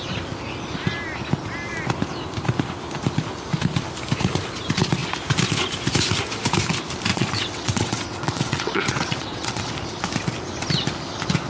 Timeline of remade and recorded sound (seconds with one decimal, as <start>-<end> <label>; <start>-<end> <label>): 0.0-7.1 recorded; 7.1-9.7 remade; 9.7-11.5 recorded